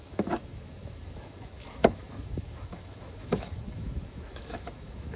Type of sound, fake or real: fake